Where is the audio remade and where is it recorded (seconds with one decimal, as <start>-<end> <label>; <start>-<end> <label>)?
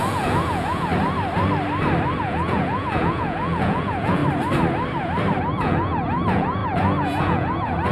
0.0-0.9 remade; 0.9-2.2 recorded; 2.2-4.2 remade; 4.2-5.4 recorded; 5.4-7.9 remade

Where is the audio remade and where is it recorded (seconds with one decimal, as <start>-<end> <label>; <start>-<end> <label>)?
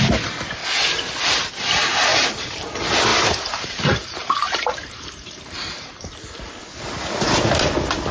0.0-0.6 recorded; 0.6-1.5 remade; 1.5-2.1 recorded; 2.1-2.7 remade; 2.7-3.1 recorded; 3.1-6.5 remade; 6.5-8.1 recorded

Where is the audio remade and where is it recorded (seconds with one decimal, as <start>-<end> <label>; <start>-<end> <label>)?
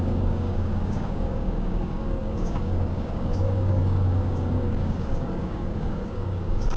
0.0-6.8 remade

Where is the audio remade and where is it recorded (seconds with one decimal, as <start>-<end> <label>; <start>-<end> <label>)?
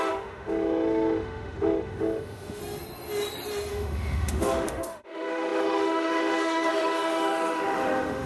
0.0-2.6 remade; 2.6-3.7 recorded; 3.7-8.3 remade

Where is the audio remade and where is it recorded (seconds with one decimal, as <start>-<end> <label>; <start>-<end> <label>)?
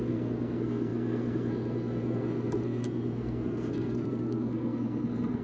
0.0-5.4 remade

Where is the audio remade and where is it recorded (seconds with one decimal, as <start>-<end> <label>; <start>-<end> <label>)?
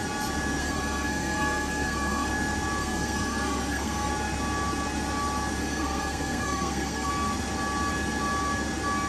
0.0-0.6 recorded; 0.6-2.3 remade; 2.3-2.8 recorded; 2.8-4.1 remade; 4.1-5.6 recorded; 5.6-7.1 remade; 7.1-9.1 recorded